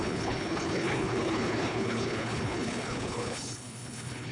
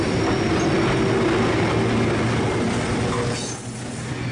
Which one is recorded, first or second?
second